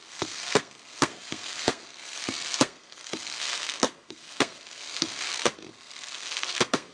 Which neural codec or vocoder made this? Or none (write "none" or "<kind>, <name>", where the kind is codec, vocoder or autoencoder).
codec, SNAC